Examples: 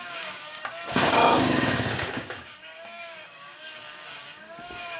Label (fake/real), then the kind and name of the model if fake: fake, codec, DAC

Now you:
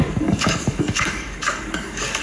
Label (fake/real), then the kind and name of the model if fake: fake, codec, DAC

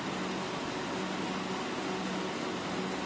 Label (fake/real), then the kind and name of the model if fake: real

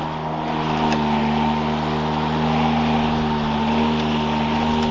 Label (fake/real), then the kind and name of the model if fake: real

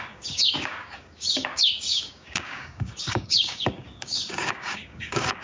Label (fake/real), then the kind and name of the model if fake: fake, codec, DAC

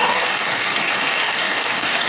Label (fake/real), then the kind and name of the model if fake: fake, codec, DAC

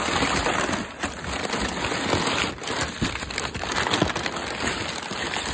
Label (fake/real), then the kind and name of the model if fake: real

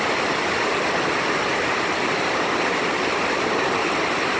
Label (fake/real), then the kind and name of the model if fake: real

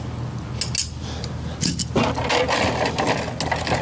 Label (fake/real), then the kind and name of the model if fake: real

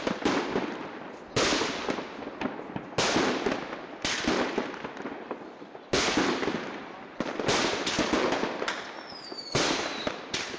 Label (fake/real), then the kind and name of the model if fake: real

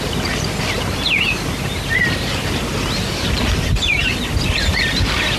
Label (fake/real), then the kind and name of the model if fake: real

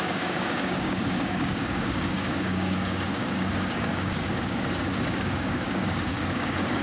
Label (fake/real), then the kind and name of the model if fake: fake, codec, DAC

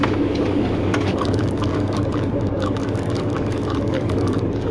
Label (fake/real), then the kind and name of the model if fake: fake, codec, DAC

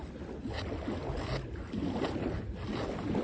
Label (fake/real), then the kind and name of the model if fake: real